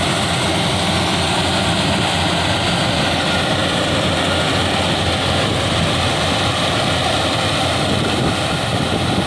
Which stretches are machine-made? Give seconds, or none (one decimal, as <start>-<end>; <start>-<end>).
none